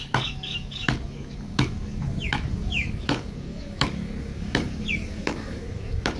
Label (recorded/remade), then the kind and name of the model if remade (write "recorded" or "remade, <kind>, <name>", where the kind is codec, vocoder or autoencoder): remade, codec, DAC